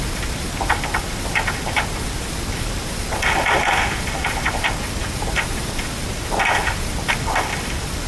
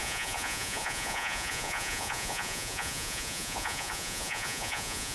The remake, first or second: second